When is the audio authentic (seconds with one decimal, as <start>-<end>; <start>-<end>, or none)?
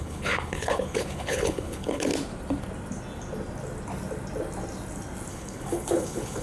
2.1-5.3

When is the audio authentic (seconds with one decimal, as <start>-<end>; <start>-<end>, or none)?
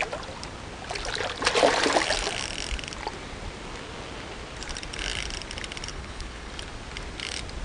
0.0-5.9; 6.5-7.6